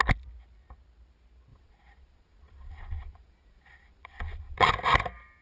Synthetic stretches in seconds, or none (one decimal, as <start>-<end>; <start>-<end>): 1.5-4.7